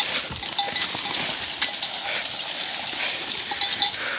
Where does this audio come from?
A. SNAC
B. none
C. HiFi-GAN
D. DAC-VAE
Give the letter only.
B